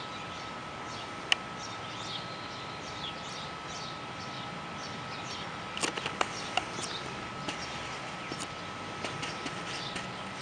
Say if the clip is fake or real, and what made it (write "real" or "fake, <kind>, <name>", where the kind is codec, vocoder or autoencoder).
real